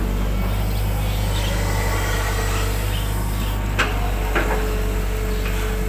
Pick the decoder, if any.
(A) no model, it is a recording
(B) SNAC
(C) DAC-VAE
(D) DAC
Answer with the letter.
A